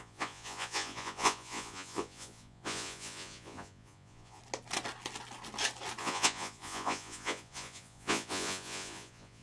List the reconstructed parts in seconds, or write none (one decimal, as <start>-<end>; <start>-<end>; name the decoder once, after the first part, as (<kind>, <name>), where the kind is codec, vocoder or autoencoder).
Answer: 0.0-4.4 (vocoder, Vocos); 6.0-9.4